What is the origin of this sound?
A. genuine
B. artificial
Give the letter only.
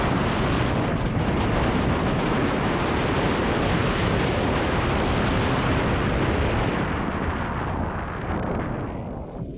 A